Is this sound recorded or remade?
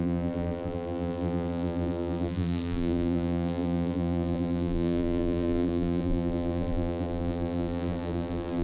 remade